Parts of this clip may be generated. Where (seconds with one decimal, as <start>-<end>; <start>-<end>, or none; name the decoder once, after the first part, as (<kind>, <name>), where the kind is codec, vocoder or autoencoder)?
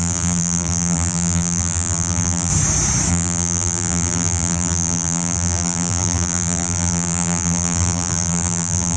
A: 0.0-2.5 (vocoder, BigVGAN v2); 3.1-9.0